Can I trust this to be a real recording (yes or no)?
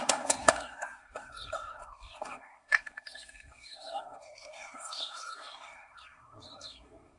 no